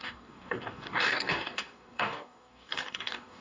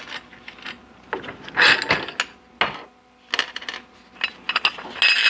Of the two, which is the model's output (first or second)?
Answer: first